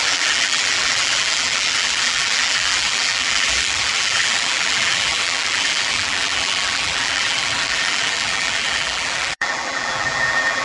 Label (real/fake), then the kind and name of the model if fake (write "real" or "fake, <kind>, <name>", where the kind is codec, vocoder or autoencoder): fake, vocoder, BigVGAN v2